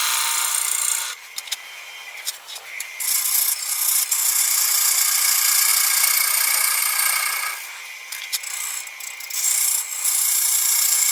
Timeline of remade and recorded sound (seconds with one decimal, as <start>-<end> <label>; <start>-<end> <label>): 0.0-2.0 recorded; 2.0-4.4 remade; 4.4-11.1 recorded